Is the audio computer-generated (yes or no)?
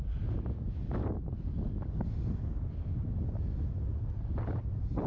no